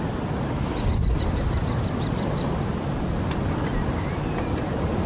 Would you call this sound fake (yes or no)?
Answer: no